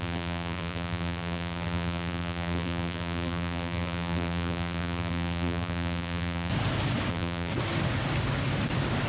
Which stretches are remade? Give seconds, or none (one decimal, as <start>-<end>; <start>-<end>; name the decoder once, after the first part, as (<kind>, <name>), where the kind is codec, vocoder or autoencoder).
0.0-6.5 (vocoder, BigVGAN v2); 7.1-7.5